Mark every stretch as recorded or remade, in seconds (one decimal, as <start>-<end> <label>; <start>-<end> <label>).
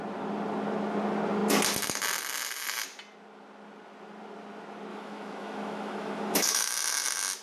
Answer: 0.0-4.9 recorded; 4.9-6.7 remade; 6.7-7.4 recorded